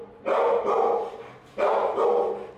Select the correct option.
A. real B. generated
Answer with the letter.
A